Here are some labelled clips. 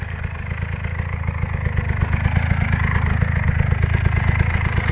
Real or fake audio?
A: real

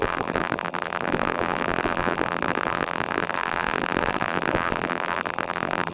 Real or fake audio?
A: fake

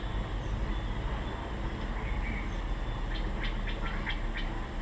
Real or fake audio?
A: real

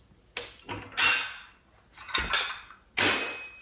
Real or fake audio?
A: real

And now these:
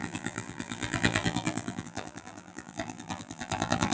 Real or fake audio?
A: fake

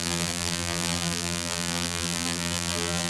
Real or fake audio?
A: fake